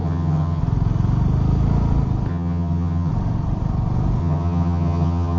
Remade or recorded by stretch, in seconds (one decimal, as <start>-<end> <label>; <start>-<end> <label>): 0.0-0.6 remade; 0.6-2.3 recorded; 2.3-3.1 remade; 3.1-4.2 recorded; 4.2-5.4 remade